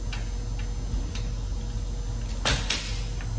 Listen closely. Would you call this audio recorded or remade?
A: recorded